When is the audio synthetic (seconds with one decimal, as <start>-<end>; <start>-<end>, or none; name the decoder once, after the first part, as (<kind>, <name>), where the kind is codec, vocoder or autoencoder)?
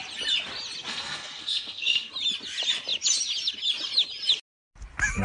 0.9-2.1 (codec, SNAC)